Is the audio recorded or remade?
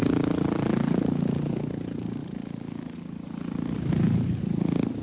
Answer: recorded